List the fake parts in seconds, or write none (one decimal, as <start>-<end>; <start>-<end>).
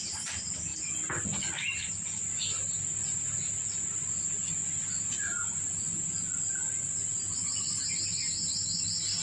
none